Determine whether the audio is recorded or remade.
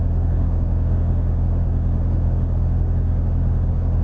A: remade